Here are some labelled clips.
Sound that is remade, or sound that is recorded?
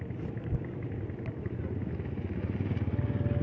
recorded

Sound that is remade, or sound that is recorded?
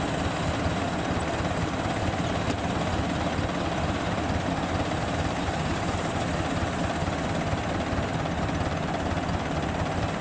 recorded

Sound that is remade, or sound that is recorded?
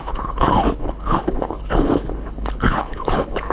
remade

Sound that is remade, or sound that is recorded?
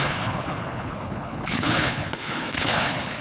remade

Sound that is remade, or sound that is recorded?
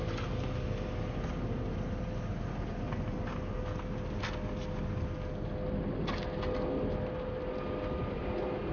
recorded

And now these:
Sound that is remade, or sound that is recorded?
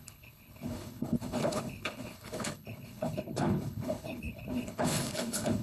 remade